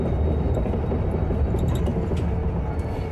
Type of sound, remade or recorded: recorded